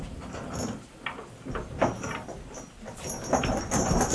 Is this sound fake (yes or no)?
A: no